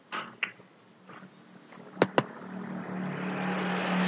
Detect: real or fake real